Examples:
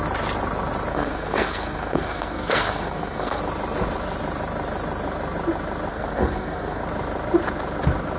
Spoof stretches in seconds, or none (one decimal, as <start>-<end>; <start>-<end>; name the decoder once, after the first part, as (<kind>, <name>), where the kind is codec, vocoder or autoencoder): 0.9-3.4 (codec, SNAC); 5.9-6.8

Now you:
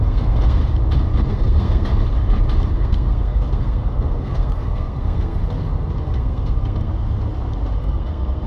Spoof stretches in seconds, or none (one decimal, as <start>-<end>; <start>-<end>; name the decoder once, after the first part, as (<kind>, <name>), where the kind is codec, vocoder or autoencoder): 0.0-0.6 (codec, SNAC); 1.3-1.9; 2.7-5.4; 6.0-6.9; 7.8-8.5

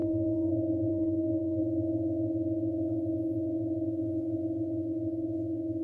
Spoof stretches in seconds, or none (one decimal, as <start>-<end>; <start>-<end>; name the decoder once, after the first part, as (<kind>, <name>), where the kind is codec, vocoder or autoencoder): 0.0-0.5 (codec, SNAC); 0.9-1.6

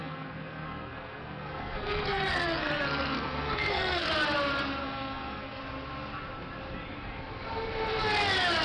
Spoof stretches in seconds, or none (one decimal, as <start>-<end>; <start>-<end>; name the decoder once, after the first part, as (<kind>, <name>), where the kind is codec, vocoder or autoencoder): 0.0-4.1 (codec, SNAC); 4.8-5.6

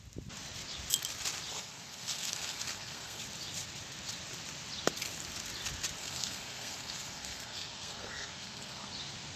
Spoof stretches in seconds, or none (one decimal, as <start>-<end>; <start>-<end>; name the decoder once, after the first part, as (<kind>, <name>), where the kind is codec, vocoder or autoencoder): 1.5-3.2 (codec, SNAC); 6.0-8.9

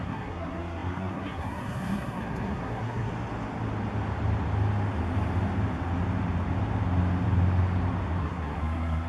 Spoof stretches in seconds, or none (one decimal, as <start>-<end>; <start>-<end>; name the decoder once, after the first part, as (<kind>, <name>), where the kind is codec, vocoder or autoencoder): 0.0-3.1 (codec, SNAC); 8.2-9.1

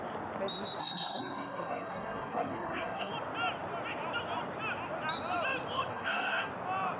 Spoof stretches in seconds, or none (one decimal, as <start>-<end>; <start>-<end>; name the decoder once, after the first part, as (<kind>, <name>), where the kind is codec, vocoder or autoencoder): 0.8-3.1 (codec, SNAC); 5.9-6.5